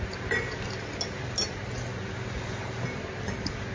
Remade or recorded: recorded